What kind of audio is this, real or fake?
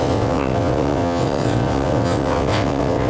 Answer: fake